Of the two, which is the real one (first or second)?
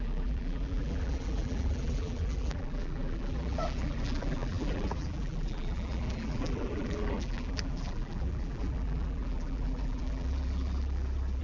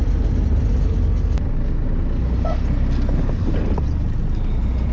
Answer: second